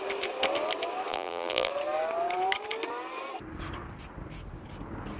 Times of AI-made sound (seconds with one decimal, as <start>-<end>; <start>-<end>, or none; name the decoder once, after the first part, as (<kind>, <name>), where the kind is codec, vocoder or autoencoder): 1.1-1.7 (vocoder, BigVGAN v2)

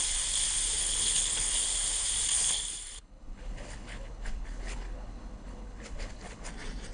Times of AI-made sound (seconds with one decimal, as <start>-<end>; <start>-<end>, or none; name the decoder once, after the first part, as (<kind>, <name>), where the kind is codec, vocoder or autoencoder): 0.8-1.5 (codec, HILCodec); 2.4-6.5

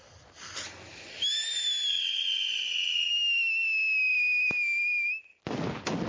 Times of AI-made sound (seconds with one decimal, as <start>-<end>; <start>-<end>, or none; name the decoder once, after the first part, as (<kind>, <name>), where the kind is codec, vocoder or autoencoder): 1.9-3.1 (vocoder, WaveNeXt)

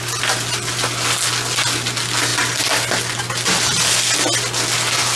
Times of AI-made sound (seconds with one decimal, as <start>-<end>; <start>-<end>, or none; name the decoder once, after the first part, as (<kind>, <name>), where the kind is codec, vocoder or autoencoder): none

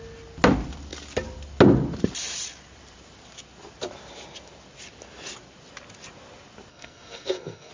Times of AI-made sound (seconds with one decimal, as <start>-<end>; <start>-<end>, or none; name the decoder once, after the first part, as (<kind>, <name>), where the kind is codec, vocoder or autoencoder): 6.7-7.7 (codec, SNAC)

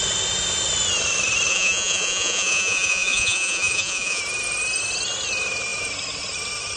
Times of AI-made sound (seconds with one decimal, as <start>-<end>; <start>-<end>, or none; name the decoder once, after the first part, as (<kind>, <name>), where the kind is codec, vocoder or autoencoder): 1.5-4.2 (vocoder, Vocos)